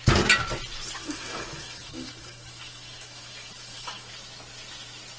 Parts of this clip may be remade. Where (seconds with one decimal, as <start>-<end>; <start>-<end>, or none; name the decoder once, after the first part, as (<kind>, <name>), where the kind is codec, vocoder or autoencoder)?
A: 1.0-4.1 (autoencoder, DAC-VAE)